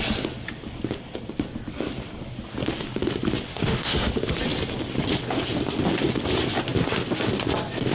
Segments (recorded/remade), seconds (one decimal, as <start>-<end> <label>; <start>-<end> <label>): 0.0-3.5 recorded; 3.5-4.1 remade; 4.1-7.9 recorded